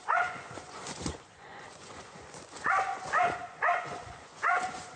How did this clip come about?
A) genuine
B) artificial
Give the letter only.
B